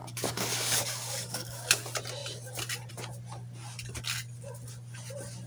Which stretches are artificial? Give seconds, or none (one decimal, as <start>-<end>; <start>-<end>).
0.0-1.8